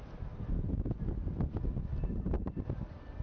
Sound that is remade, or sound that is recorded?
recorded